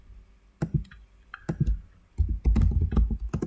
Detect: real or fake real